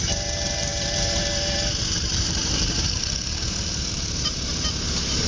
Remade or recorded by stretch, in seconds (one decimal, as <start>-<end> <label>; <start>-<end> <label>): 0.0-5.3 remade